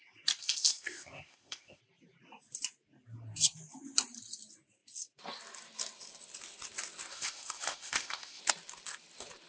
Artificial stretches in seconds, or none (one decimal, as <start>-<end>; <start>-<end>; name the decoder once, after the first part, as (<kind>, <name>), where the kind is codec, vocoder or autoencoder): 0.4-1.8 (codec, ZipCodec); 7.1-8.4